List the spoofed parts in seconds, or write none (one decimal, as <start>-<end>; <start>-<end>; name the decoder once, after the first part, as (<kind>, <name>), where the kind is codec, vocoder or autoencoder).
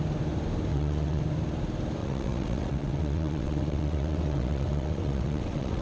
0.7-1.2 (vocoder, WaveNeXt); 2.0-5.8